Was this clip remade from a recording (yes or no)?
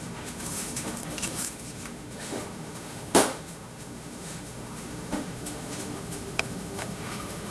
yes